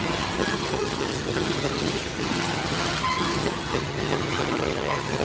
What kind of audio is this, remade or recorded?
remade